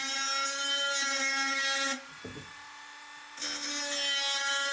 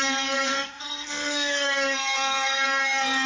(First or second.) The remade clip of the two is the second